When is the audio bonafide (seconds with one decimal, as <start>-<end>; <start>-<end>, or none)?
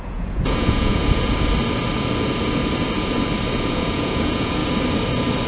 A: 1.0-3.7; 4.6-5.5